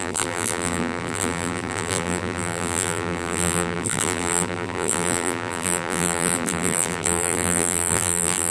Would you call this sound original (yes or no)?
no